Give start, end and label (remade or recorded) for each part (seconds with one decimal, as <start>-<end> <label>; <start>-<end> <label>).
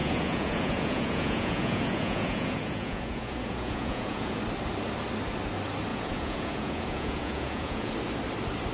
0.0-4.4 remade; 4.4-5.9 recorded; 5.9-7.9 remade; 7.9-8.7 recorded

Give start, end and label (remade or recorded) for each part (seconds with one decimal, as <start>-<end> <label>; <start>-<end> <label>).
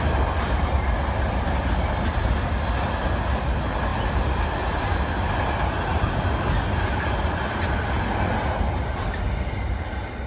0.0-10.3 recorded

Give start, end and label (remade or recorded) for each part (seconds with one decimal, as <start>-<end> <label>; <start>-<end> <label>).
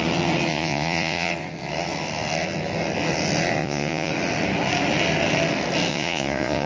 0.0-0.5 recorded; 0.5-1.3 remade; 1.3-3.6 recorded; 3.6-4.1 remade; 4.1-5.9 recorded; 5.9-6.7 remade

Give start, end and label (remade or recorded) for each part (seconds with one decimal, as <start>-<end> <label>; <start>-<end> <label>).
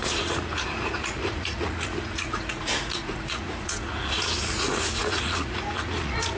0.0-6.4 remade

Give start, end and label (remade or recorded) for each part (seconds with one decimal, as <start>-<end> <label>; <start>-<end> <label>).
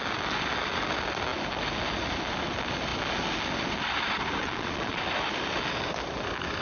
0.0-4.4 recorded; 4.4-5.0 remade; 5.0-6.6 recorded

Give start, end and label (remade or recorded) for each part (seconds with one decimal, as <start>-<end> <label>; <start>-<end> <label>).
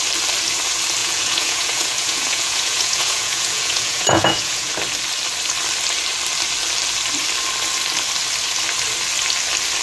0.0-1.0 recorded; 1.0-4.7 remade; 4.7-9.8 recorded